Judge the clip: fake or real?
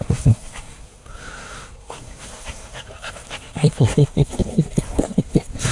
fake